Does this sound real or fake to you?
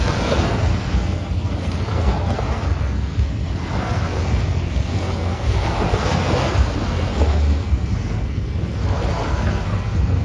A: fake